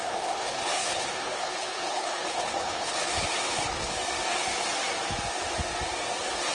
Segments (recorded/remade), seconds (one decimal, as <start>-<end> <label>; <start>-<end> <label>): 0.0-3.9 remade; 3.9-6.5 recorded